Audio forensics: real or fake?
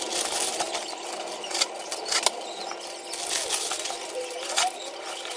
real